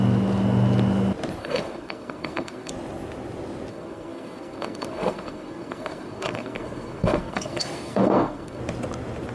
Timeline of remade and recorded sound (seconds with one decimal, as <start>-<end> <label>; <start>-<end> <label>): 0.0-1.4 recorded; 1.4-2.7 remade; 2.7-3.7 recorded; 3.7-8.6 remade; 8.6-9.3 recorded